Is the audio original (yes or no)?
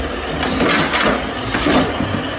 yes